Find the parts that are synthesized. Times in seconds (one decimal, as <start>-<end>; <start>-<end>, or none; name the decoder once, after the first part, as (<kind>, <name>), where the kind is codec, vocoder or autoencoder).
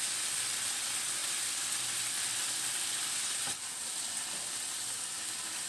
1.2-3.7 (vocoder, BigVGAN v2)